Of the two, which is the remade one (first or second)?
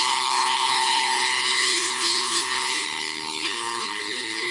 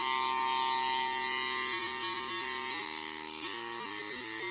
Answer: first